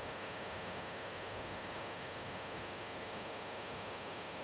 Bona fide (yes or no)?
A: no